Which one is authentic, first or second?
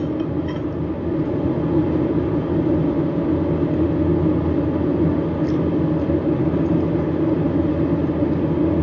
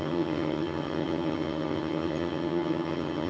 first